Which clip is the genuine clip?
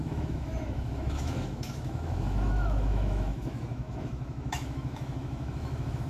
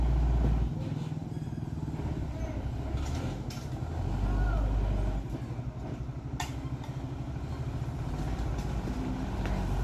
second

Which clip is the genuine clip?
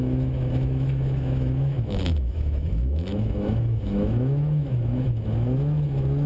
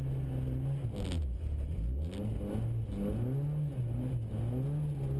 second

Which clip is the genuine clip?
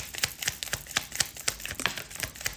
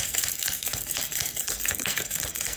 first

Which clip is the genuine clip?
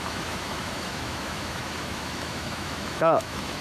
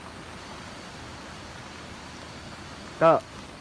second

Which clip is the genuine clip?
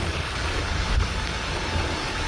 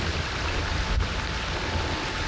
second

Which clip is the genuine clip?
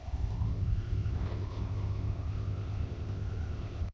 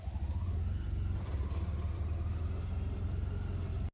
second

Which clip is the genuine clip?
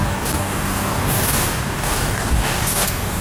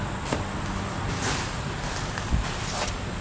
second